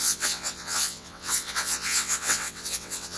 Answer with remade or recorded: remade